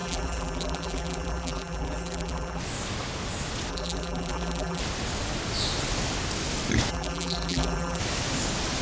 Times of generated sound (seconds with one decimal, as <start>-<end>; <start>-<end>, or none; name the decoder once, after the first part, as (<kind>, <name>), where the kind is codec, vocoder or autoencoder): 0.0-2.6 (vocoder, BigVGAN v2); 3.7-4.8; 6.9-8.0